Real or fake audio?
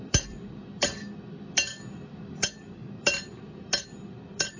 fake